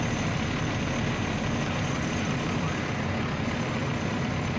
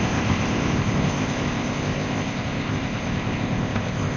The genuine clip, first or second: first